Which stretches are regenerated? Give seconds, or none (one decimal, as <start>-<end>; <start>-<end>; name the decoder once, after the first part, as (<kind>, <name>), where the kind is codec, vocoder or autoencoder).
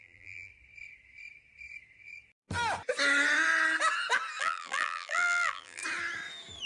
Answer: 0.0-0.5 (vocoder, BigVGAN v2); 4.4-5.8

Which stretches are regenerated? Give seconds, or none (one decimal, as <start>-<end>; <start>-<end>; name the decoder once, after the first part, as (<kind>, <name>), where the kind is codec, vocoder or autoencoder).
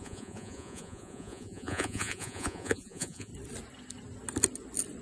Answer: 0.0-3.3 (vocoder, Vocos)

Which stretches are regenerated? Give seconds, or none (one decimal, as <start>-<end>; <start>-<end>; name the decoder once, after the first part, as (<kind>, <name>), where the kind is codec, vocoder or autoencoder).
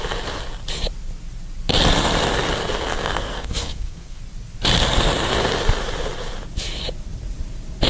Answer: 2.9-4.2 (codec, SNAC)